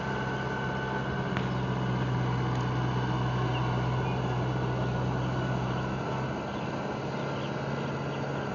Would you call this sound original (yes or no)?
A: yes